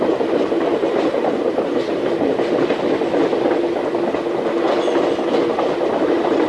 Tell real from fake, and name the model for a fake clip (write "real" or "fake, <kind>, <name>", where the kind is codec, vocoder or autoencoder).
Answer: fake, vocoder, BigVGAN v2